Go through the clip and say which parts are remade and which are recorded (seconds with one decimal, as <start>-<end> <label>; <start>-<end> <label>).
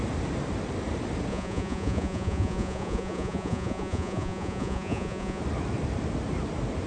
0.0-1.3 recorded; 1.3-5.4 remade; 5.4-6.9 recorded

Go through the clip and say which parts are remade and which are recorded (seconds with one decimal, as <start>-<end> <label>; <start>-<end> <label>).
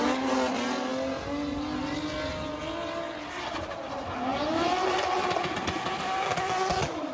0.0-7.1 recorded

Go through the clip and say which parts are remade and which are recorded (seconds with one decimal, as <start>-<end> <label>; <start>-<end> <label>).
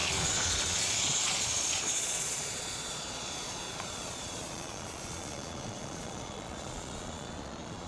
0.0-7.9 remade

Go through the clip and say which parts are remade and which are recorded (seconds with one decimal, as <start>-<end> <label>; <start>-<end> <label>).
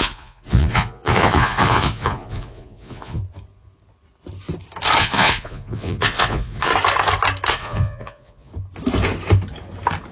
0.0-3.2 remade; 3.2-5.0 recorded; 5.0-6.7 remade; 6.7-7.5 recorded; 7.5-8.5 remade; 8.5-10.1 recorded